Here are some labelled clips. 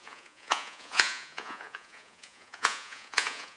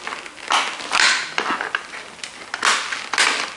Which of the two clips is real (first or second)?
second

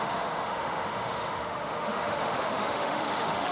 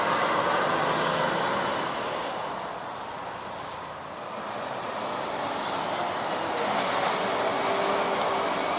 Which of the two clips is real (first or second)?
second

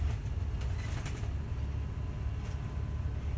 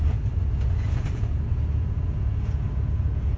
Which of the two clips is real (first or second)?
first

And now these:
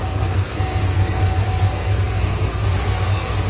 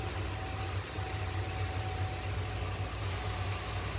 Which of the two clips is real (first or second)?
second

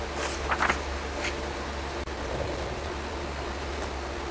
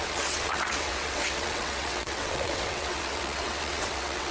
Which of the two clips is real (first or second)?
first